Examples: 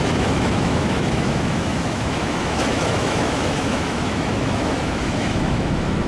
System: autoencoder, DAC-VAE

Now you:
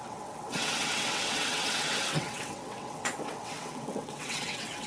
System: vocoder, WaveNeXt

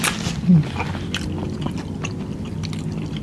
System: none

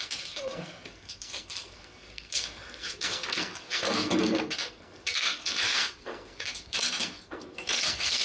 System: codec, SNAC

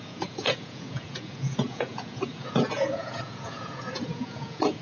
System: vocoder, Vocos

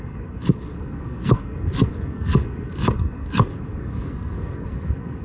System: codec, SNAC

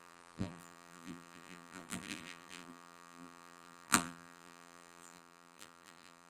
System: vocoder, BigVGAN v2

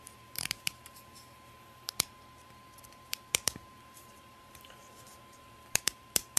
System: vocoder, BigVGAN v2